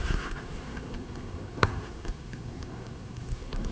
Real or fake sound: fake